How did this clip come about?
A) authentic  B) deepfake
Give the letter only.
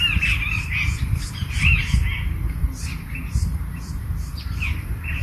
B